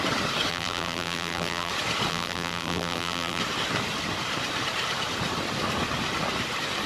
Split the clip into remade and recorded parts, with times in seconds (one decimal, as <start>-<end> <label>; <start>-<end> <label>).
0.0-0.5 recorded; 0.5-1.7 remade; 1.7-2.1 recorded; 2.1-3.4 remade; 3.4-6.9 recorded